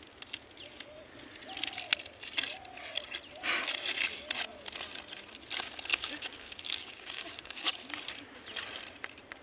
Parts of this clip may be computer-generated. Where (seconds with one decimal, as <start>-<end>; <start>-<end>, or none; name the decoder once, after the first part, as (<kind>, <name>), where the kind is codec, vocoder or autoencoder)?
5.9-7.7 (codec, DAC)